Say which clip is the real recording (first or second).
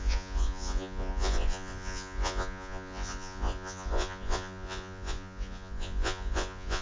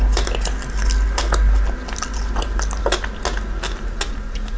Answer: second